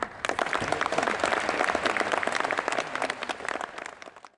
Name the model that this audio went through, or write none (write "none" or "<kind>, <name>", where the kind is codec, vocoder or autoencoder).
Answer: none